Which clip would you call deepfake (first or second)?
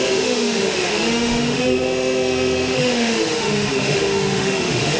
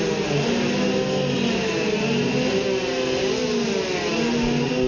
first